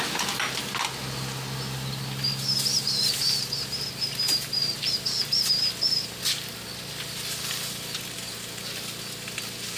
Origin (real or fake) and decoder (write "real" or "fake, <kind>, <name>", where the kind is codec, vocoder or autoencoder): real